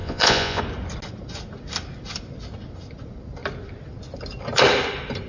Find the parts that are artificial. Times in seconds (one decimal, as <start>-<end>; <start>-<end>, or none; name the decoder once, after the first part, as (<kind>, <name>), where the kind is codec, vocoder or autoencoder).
0.0-0.6 (vocoder, Vocos)